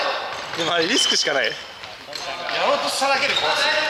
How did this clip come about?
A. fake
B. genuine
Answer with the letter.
B